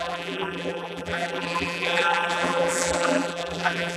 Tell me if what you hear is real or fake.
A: fake